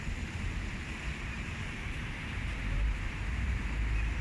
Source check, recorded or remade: remade